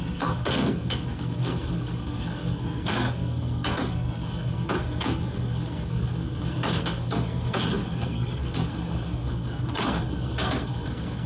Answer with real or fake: fake